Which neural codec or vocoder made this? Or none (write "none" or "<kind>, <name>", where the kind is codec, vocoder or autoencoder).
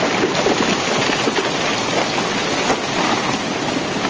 none